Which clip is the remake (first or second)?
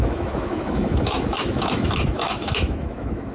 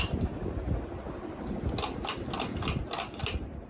first